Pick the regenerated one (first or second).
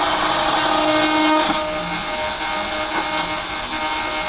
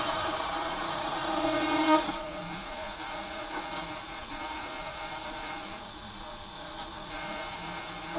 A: second